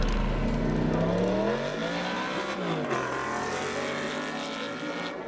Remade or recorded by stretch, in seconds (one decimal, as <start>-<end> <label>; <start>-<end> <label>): 0.0-5.3 recorded